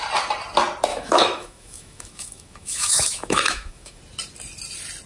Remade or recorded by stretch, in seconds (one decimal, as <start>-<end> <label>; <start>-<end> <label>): 0.0-0.9 recorded; 0.9-4.0 remade; 4.0-5.1 recorded

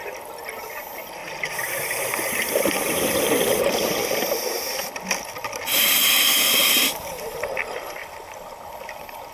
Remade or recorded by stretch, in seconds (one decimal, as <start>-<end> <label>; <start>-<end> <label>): 0.0-1.2 recorded; 1.2-4.4 remade; 4.4-6.6 recorded; 6.6-7.5 remade; 7.5-8.0 recorded; 8.0-9.3 remade